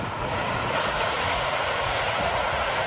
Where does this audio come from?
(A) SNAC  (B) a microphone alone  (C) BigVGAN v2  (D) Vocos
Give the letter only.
D